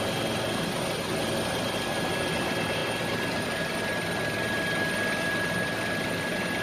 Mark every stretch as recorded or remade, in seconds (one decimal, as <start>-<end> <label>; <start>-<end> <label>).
0.0-6.6 recorded